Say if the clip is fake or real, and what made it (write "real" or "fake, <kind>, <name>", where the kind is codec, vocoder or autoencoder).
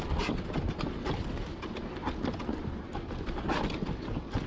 real